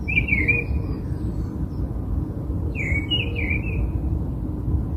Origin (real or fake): real